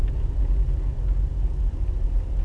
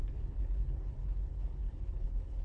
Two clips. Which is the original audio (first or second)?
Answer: first